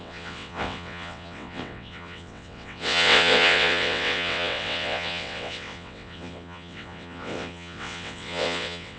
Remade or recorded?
remade